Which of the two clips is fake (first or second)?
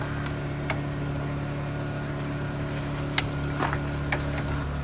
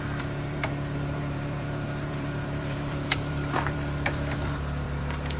second